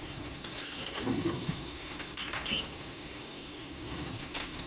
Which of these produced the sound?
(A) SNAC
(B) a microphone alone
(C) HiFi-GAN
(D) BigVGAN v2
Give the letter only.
A